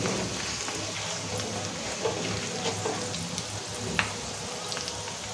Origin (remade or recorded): recorded